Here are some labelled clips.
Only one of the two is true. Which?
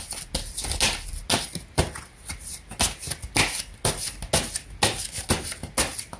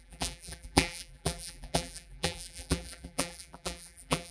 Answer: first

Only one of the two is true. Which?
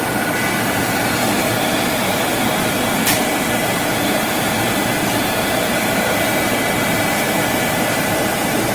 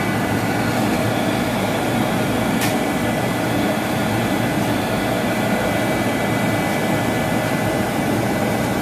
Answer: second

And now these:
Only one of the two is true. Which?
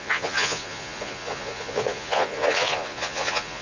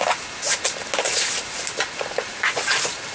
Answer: second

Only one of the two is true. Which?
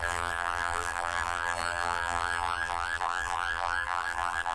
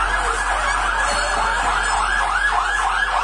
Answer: second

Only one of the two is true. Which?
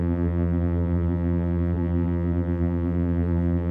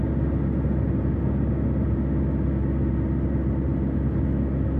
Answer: second